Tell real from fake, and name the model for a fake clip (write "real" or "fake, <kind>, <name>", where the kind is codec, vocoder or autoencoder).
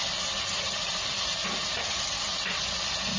real